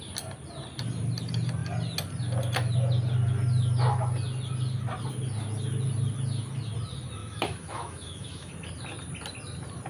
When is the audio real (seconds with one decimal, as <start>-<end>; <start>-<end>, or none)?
0.0-7.2; 8.5-9.9